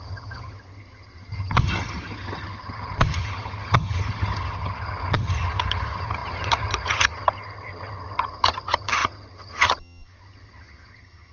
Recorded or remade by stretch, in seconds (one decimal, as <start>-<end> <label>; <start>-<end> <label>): 0.0-11.3 remade